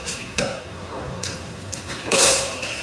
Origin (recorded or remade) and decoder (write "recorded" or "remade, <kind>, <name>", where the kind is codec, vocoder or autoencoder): remade, codec, SNAC